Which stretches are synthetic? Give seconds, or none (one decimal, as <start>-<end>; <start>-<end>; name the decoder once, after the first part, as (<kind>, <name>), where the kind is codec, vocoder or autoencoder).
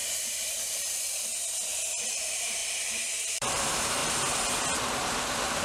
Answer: 0.0-1.3 (vocoder, BigVGAN v2); 1.8-4.0; 4.9-5.6